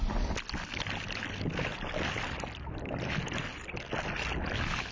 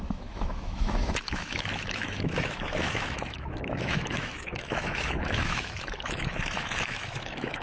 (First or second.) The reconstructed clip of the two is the second